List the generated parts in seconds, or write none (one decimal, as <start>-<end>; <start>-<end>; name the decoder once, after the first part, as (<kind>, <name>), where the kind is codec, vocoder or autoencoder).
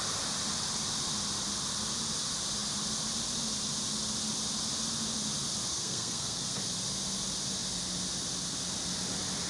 5.7-6.6 (codec, SNAC)